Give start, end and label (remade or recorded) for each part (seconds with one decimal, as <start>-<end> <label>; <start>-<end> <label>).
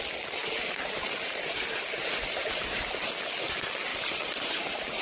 0.0-3.9 recorded; 3.9-4.5 remade; 4.5-5.0 recorded